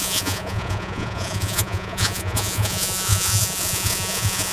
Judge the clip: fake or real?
fake